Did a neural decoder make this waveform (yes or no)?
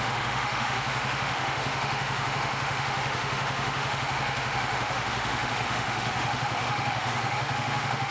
yes